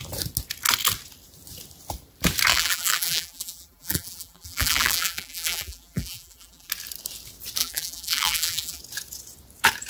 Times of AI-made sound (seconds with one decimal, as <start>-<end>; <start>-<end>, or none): 2.5-6.7; 7.6-8.8